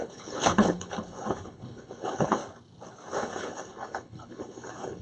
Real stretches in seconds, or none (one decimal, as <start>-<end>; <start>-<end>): 2.4-3.1